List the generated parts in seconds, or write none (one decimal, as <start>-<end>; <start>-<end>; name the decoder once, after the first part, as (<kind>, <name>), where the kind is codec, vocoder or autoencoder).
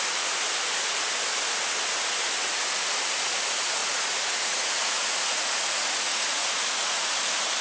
3.8-7.1 (vocoder, Vocos)